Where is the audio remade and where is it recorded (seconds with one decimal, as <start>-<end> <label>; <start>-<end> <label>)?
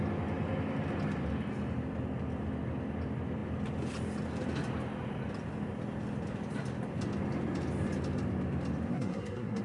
0.0-8.9 recorded; 8.9-9.6 remade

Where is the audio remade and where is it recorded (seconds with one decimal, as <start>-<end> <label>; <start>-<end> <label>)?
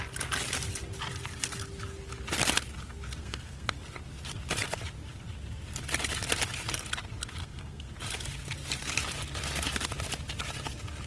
0.0-3.2 recorded; 3.2-3.7 remade; 3.7-7.4 recorded; 7.4-8.0 remade; 8.0-11.1 recorded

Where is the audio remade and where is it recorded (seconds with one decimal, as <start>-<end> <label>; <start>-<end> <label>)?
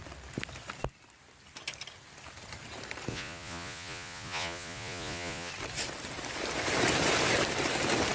0.0-3.1 recorded; 3.1-5.5 remade; 5.5-8.1 recorded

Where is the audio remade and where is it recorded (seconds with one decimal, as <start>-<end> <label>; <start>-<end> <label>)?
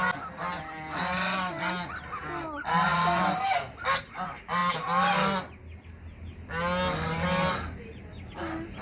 0.0-8.8 recorded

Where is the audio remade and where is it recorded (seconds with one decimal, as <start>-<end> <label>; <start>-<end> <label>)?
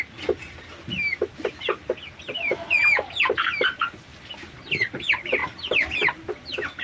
0.0-6.8 recorded